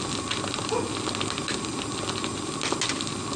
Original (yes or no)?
yes